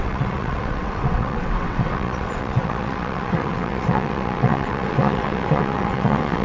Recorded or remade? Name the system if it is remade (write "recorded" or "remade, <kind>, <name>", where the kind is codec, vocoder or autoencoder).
remade, vocoder, WaveNeXt